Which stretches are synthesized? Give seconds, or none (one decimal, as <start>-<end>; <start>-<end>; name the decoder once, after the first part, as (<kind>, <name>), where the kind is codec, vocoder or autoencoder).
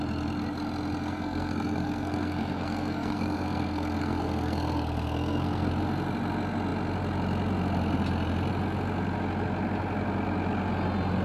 1.0-5.7 (codec, SNAC)